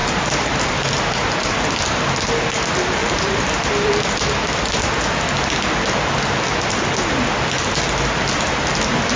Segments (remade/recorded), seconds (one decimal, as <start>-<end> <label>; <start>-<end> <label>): 0.0-0.9 remade; 0.9-3.0 recorded; 3.0-3.9 remade; 3.9-9.2 recorded